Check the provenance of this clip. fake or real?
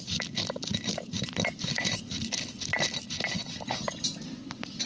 real